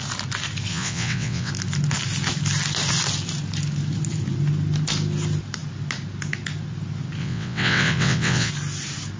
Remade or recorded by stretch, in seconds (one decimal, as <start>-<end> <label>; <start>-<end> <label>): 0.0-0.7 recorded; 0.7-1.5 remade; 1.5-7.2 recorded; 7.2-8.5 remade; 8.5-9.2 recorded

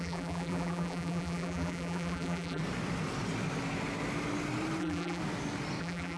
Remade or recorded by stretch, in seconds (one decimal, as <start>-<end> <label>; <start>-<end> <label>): 0.0-2.6 remade; 2.6-4.8 recorded; 4.8-5.2 remade; 5.2-5.8 recorded; 5.8-6.2 remade

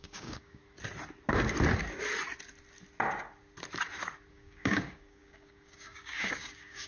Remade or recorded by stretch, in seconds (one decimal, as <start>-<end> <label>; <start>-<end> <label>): 0.0-0.6 remade; 0.6-4.3 recorded; 4.3-6.9 remade

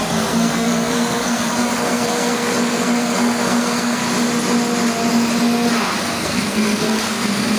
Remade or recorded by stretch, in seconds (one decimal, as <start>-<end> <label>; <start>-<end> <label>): 0.0-4.0 remade; 4.0-6.0 recorded; 6.0-7.6 remade